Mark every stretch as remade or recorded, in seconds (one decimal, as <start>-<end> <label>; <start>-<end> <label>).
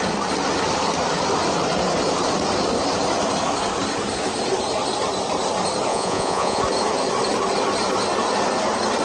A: 0.0-5.9 recorded; 5.9-6.6 remade; 6.6-9.0 recorded